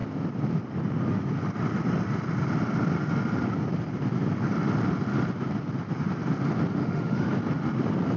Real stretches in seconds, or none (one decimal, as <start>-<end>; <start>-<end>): 0.0-6.8; 7.3-8.2